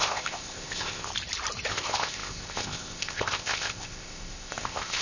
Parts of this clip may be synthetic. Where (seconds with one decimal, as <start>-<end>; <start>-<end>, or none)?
0.0-1.1; 1.7-5.0